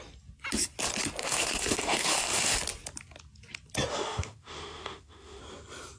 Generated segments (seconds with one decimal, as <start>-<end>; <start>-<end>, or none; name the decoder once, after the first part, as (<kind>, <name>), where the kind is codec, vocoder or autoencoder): 1.2-2.6 (autoencoder, DAC-VAE); 3.9-5.4